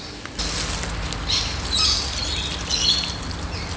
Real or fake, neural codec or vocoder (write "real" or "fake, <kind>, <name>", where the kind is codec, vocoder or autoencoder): real